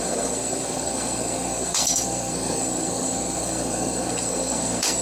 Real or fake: fake